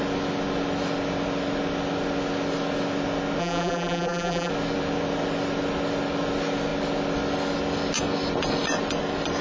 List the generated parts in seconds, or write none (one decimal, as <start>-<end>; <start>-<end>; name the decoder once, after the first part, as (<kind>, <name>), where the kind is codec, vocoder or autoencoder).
3.4-4.5 (vocoder, BigVGAN v2)

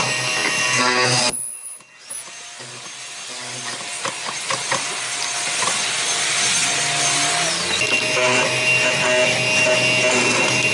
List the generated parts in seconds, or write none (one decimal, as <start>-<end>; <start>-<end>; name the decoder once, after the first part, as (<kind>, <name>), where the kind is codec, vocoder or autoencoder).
none

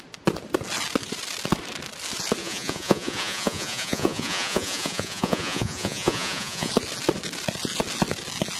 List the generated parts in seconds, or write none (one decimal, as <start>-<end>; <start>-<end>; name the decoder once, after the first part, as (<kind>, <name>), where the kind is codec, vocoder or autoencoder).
2.4-6.7 (vocoder, Vocos)

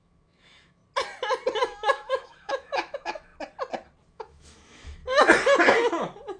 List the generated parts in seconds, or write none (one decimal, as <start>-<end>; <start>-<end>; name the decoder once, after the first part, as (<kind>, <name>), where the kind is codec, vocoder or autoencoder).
0.0-0.8 (autoencoder, DAC-VAE); 1.6-3.3; 4.1-5.0